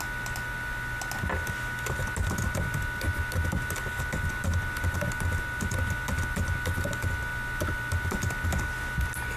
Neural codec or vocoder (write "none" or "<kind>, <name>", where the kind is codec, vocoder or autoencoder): none